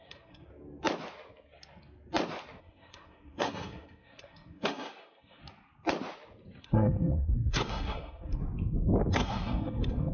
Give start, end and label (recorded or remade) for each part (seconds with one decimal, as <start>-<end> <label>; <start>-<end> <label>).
0.0-0.5 remade; 0.5-2.6 recorded; 2.6-5.4 remade; 5.4-6.6 recorded; 6.6-8.4 remade; 8.4-9.1 recorded; 9.1-10.1 remade